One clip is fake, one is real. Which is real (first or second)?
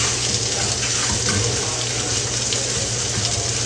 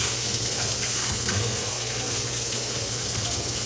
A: first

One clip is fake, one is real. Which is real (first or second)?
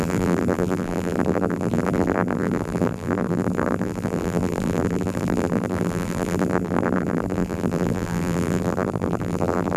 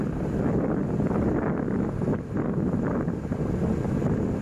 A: second